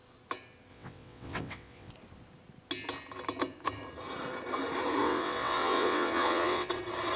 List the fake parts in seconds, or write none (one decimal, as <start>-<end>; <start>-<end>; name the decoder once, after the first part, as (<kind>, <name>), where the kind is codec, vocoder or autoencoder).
0.7-1.9 (vocoder, WaveNeXt); 5.0-6.7